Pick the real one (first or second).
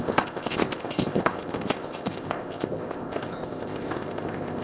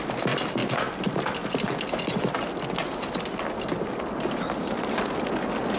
second